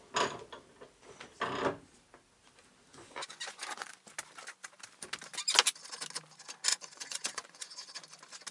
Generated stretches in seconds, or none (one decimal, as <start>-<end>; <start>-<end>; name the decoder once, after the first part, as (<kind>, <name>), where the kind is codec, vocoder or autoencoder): 2.9-3.9 (vocoder, Vocos); 6.7-8.0